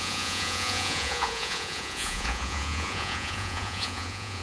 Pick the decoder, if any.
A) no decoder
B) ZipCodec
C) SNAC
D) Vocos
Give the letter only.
D